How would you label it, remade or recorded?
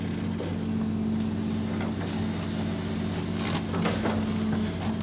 recorded